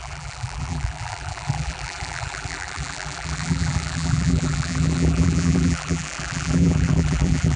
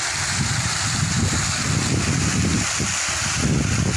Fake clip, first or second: first